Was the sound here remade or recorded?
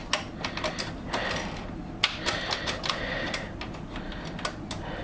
recorded